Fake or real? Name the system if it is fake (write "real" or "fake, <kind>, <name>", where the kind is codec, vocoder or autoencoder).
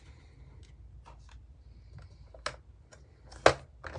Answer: real